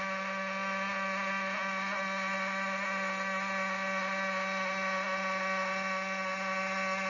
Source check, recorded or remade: recorded